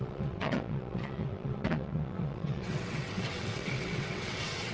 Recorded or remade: remade